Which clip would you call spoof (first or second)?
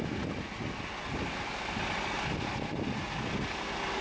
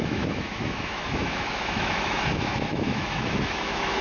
second